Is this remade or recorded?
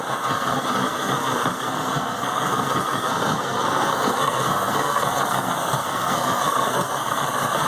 remade